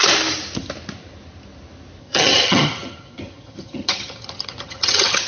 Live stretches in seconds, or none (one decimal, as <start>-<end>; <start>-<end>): 0.0-2.0